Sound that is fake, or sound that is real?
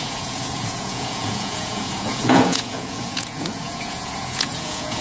fake